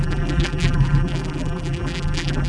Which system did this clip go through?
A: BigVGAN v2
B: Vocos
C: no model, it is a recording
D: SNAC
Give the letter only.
A